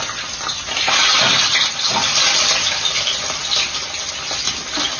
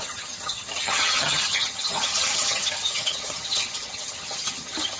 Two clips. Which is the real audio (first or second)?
first